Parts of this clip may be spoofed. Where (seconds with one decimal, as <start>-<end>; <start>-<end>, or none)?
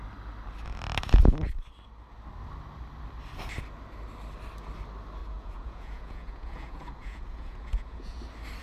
5.2-8.2